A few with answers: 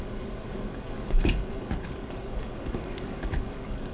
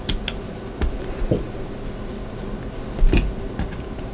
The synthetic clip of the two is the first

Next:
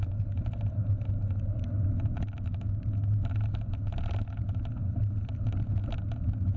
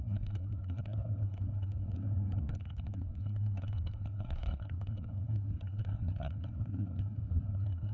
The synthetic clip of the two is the second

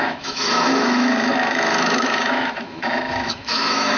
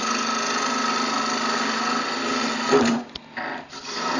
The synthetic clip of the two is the first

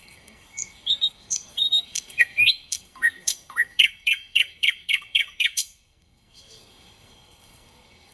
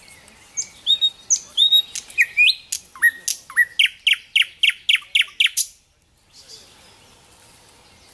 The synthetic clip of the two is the first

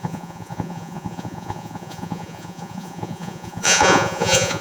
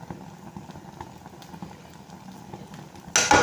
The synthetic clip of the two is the first